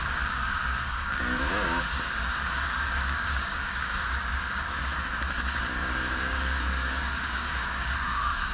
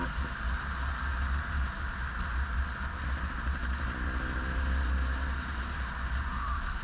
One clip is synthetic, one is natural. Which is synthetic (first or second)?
first